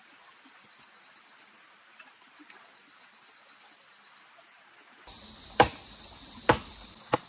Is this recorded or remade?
recorded